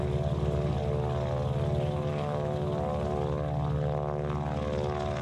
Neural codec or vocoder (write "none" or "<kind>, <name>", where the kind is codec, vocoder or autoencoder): none